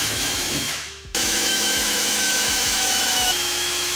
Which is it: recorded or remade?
remade